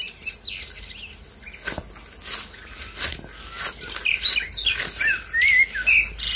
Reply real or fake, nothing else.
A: real